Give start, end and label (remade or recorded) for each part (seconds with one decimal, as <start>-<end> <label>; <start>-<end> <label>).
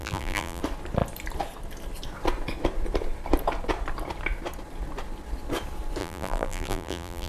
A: 0.0-0.6 remade; 0.6-6.0 recorded; 6.0-7.3 remade